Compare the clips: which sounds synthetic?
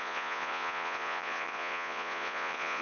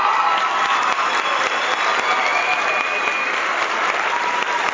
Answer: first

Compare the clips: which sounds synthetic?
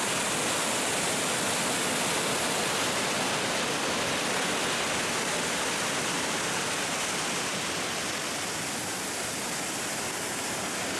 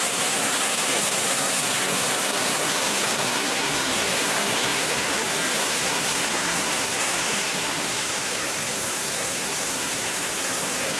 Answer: second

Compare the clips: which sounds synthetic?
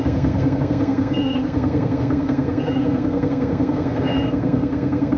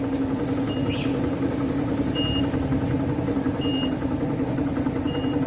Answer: first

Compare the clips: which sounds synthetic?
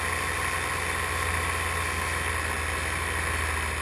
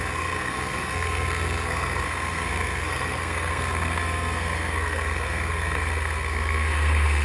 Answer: second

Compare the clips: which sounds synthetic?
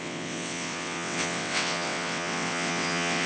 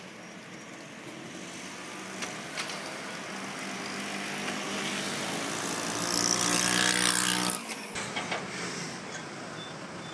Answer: first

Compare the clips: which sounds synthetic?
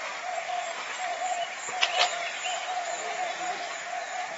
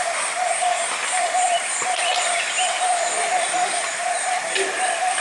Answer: second